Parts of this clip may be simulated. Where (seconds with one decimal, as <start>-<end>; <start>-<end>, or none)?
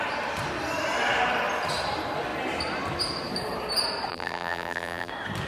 4.1-5.1